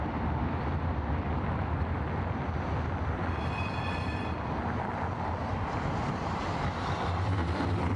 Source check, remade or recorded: recorded